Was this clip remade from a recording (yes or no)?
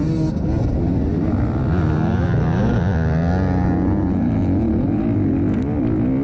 no